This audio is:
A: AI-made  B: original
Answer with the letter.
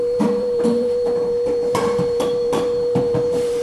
A